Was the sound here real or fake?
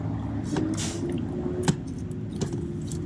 real